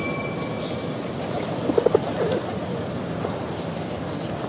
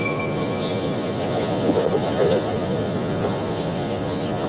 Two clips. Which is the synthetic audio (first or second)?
second